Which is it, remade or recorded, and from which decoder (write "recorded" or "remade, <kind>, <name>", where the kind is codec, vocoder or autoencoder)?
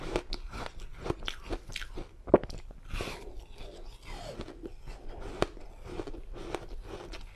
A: recorded